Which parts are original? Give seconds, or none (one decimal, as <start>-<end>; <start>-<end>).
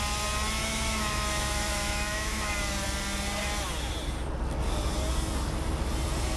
0.0-0.6; 2.5-6.4